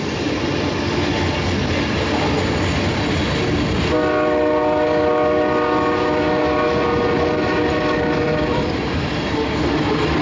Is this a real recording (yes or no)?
yes